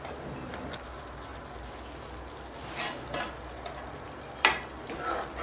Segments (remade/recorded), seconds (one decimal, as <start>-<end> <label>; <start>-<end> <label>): 0.0-1.3 remade; 1.3-3.4 recorded; 3.4-5.4 remade